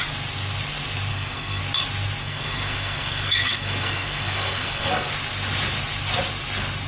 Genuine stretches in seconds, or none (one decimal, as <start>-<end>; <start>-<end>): 0.0-1.1; 1.6-2.2; 5.1-6.9